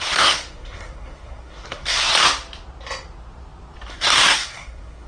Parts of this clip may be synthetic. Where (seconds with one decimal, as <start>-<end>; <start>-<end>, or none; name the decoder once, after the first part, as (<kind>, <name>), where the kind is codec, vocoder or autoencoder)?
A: 0.0-2.1 (codec, SNAC); 3.9-5.1